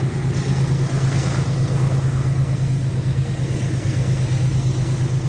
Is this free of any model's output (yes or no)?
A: no